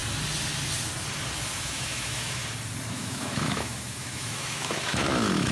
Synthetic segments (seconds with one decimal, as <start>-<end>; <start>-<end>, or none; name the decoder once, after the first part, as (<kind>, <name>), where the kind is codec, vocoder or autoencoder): 1.6-2.4 (autoencoder, DAC-VAE); 2.9-5.5